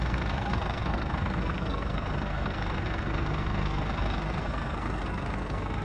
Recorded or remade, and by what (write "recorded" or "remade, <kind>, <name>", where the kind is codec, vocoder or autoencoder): remade, codec, SNAC